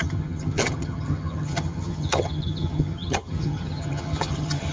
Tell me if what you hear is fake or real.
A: fake